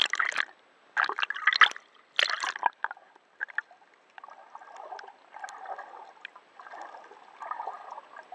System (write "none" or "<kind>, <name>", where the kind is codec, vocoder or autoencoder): none